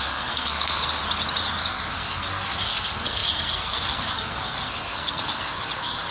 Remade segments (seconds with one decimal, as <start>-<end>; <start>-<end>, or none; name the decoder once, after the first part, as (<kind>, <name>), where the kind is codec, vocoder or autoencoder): 0.0-1.0 (codec, SNAC); 1.6-6.1